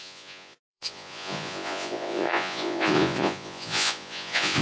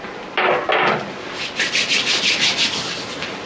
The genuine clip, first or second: second